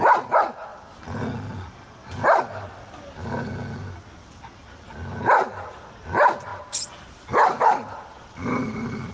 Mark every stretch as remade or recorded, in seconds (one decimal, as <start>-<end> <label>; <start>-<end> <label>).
0.0-9.1 recorded